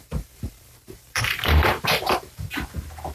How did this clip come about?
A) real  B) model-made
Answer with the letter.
B